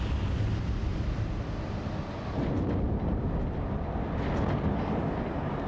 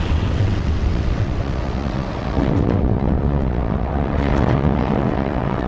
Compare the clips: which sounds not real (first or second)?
second